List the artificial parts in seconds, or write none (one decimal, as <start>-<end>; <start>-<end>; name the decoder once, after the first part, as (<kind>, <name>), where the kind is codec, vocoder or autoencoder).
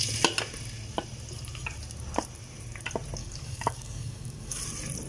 3.2-4.6 (codec, DAC)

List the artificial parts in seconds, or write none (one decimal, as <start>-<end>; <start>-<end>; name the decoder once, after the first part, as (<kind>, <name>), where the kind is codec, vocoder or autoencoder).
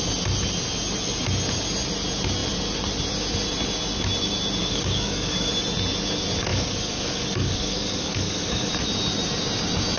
4.6-5.5 (codec, DAC); 6.5-8.7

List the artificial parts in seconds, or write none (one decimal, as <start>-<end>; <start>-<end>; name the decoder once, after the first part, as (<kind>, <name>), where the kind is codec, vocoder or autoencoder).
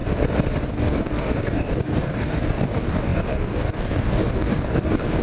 0.7-5.2 (codec, DAC)